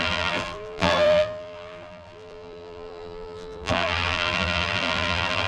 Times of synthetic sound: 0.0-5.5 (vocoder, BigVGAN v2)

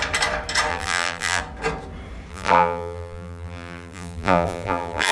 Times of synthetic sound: 0.7-1.4 (vocoder, BigVGAN v2); 2.3-5.1

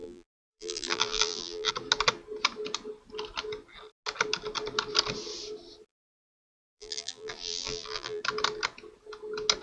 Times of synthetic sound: 0.0-1.7 (vocoder, BigVGAN v2); 5.9-8.2

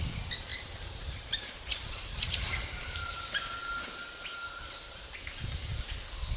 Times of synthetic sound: 0.5-3.1 (vocoder, BigVGAN v2)

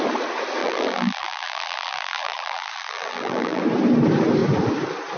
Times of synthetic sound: 0.6-3.6 (vocoder, BigVGAN v2)

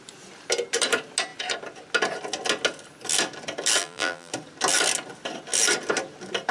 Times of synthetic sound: 3.8-4.3 (vocoder, BigVGAN v2)

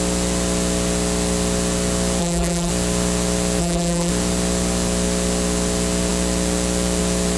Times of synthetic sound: 2.2-2.7 (vocoder, BigVGAN v2); 3.6-4.1